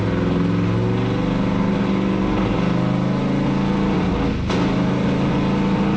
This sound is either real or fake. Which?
real